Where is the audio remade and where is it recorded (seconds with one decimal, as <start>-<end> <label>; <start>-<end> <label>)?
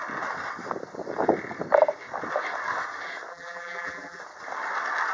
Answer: 0.0-3.3 recorded; 3.3-4.2 remade; 4.2-5.1 recorded